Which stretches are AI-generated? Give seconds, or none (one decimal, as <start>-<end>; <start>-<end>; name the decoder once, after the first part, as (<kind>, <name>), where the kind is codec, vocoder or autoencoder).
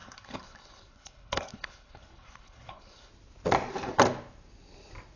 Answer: 0.0-3.1 (codec, HILCodec)